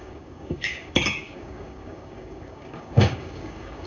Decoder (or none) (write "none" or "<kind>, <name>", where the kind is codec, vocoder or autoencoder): codec, DAC